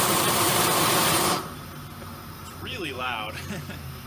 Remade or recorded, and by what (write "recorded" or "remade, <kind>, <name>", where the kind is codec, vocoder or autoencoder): remade, vocoder, BigVGAN v2